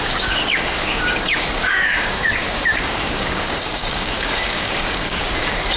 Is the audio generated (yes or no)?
yes